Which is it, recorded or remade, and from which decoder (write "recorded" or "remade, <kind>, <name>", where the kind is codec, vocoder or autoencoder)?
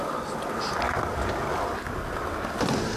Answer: recorded